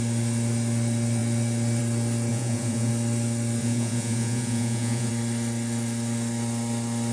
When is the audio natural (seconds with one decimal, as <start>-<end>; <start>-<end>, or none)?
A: 0.0-2.3; 2.9-3.6; 5.1-7.1